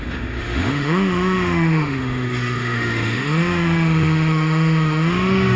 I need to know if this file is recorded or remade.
remade